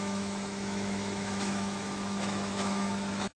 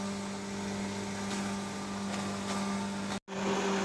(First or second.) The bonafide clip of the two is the second